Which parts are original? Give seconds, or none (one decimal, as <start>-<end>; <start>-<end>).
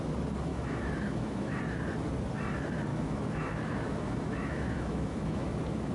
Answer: 0.0-0.5; 1.6-2.9